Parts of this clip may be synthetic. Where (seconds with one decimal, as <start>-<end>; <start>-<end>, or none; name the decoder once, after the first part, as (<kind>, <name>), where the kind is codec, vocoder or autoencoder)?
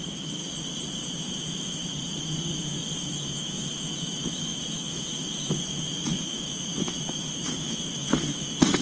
0.0-0.4 (autoencoder, DAC-VAE); 1.2-1.8; 2.5-8.8